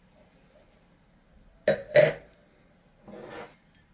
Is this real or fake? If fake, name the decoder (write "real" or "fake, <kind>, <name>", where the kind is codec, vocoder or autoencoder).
real